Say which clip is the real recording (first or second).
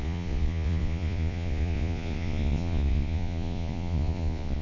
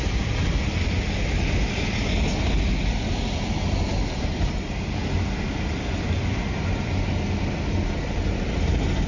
second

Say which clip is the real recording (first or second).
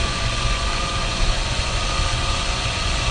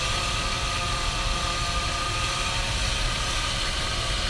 second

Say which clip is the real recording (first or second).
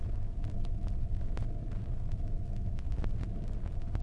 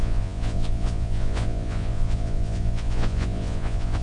first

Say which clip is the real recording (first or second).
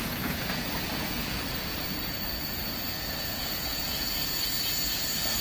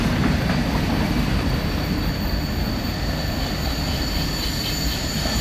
second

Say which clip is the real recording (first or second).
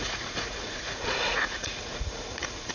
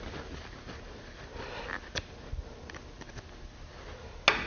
second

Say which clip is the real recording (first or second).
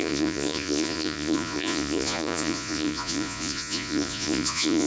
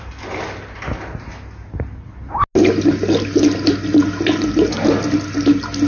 second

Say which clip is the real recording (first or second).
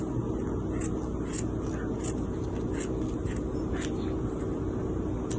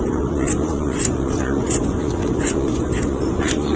first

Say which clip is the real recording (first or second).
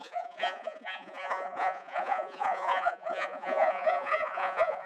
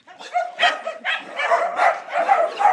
second